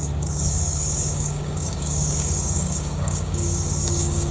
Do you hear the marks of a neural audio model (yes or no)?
yes